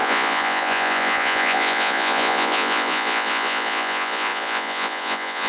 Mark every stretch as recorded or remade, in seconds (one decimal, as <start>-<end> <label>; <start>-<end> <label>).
0.0-5.5 remade